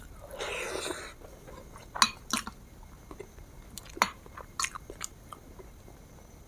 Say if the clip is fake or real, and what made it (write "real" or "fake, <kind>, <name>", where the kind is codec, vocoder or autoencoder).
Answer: real